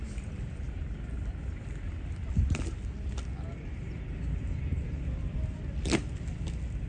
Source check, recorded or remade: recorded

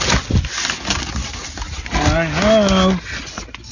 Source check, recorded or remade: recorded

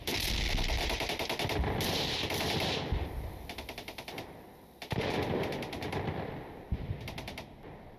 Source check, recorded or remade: recorded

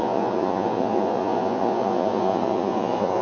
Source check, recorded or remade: remade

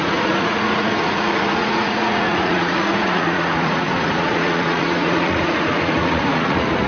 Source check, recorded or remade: remade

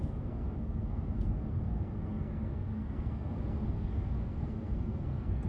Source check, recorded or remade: remade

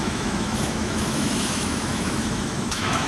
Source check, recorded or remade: remade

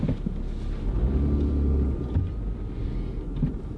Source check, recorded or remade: recorded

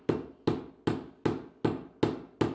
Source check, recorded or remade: recorded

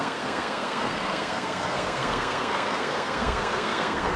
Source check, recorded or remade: remade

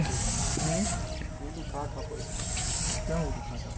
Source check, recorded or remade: recorded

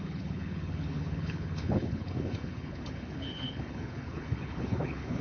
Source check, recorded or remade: remade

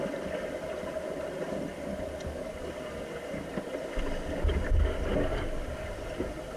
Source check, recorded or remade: recorded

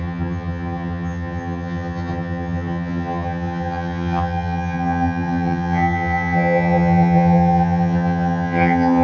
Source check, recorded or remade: remade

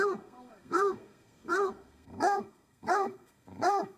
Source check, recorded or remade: remade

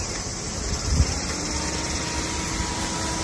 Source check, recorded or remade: recorded